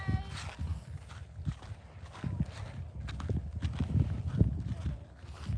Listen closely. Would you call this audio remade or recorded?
recorded